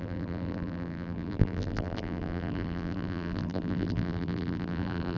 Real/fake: fake